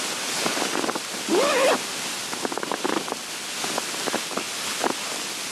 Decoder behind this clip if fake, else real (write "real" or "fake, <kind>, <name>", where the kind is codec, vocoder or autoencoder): real